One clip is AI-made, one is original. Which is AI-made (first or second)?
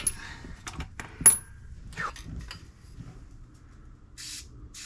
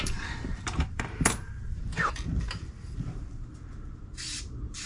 second